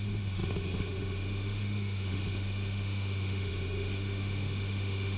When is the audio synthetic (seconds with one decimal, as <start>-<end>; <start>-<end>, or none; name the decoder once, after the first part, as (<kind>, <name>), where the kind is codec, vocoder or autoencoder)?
0.0-5.2 (autoencoder, DAC-VAE)

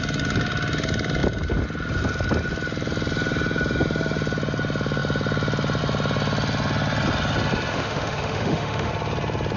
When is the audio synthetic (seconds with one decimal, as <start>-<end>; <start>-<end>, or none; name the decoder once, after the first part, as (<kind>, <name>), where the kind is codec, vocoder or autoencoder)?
7.7-8.9 (autoencoder, DAC-VAE)